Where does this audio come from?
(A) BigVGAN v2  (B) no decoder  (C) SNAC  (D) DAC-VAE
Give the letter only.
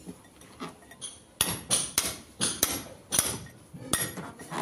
B